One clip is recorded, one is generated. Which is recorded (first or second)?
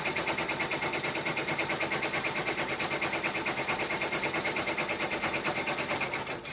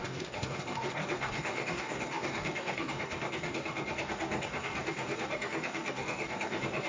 first